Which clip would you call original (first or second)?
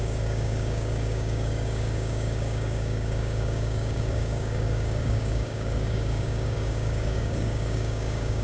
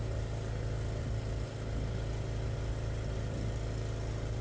second